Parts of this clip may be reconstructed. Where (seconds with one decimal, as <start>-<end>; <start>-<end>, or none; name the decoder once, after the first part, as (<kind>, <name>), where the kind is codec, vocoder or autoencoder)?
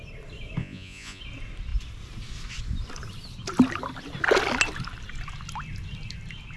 0.6-1.2 (vocoder, Vocos)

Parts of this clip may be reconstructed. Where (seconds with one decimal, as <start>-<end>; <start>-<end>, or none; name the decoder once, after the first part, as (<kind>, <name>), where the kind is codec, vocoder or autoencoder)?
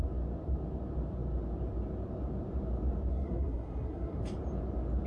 3.1-4.2 (codec, SNAC)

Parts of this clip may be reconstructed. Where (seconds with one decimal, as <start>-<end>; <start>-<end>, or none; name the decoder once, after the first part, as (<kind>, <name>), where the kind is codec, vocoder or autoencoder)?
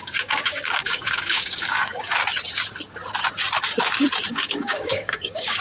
0.0-2.2 (codec, DAC); 4.3-5.6